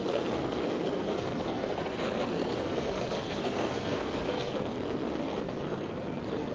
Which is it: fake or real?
fake